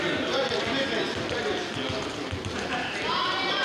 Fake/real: real